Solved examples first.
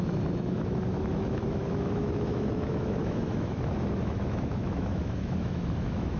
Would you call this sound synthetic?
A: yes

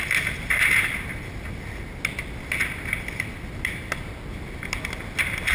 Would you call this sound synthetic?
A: no